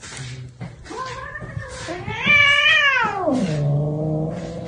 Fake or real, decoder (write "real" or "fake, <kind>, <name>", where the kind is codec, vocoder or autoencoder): real